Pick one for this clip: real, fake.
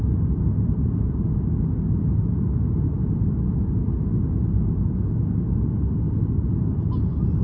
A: real